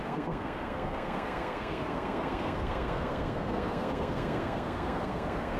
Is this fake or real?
fake